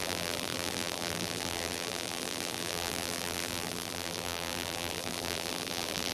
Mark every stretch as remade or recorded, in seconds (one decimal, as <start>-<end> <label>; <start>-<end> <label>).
0.0-6.1 remade